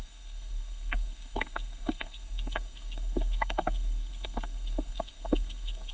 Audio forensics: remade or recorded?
remade